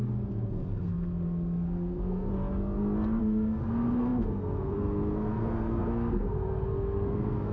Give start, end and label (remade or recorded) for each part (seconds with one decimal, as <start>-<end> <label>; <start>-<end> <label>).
0.0-2.3 remade; 2.3-3.2 recorded; 3.2-7.5 remade